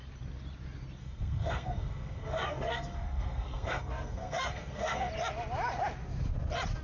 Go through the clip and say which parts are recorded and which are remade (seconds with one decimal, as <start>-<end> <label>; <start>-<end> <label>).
0.0-1.0 recorded; 1.0-5.1 remade; 5.1-6.8 recorded